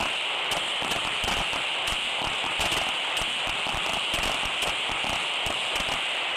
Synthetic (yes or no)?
no